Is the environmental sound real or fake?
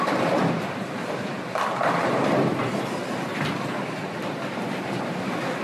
fake